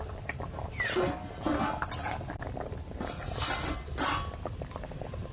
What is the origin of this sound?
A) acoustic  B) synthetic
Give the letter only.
A